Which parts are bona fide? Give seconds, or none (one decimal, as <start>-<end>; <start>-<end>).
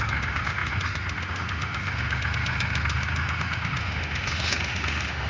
none